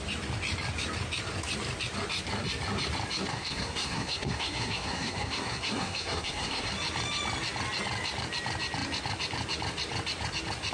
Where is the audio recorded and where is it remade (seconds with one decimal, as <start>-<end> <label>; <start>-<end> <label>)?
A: 0.0-3.3 recorded; 3.3-6.7 remade; 6.7-10.7 recorded